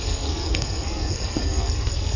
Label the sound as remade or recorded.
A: remade